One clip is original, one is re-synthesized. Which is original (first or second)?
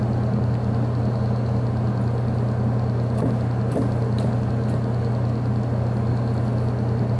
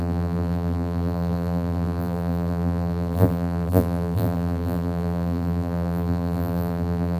first